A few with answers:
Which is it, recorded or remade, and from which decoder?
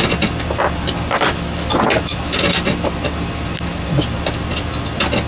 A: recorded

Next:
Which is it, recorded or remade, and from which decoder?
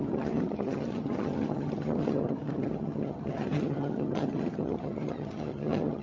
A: remade, vocoder, HiFi-GAN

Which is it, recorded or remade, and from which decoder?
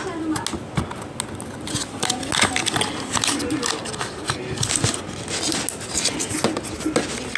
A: recorded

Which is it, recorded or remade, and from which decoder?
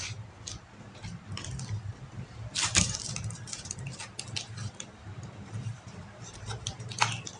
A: recorded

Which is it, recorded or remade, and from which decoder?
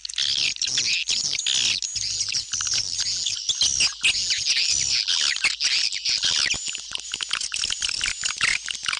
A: recorded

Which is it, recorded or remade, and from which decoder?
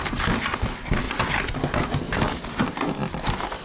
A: recorded